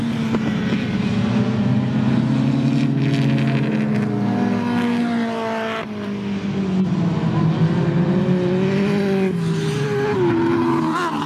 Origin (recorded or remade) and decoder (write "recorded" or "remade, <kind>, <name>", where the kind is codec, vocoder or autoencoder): recorded